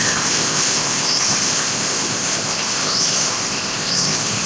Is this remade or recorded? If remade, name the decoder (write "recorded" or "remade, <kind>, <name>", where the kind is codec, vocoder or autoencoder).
remade, codec, ZipCodec